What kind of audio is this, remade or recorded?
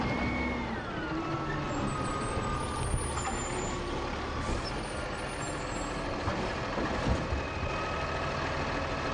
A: recorded